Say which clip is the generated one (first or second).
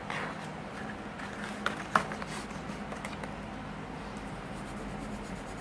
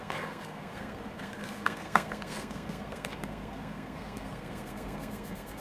second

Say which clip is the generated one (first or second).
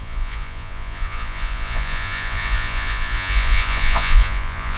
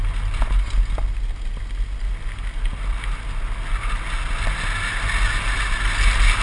first